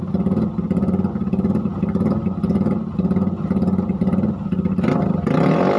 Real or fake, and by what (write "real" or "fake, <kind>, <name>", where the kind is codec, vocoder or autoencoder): real